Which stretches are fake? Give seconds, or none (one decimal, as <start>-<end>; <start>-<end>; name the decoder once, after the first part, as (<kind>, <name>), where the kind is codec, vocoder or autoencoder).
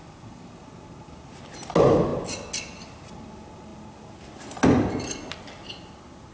none